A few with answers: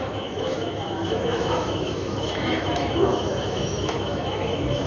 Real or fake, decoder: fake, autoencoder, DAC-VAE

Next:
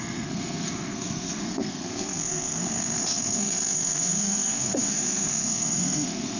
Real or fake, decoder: fake, codec, SNAC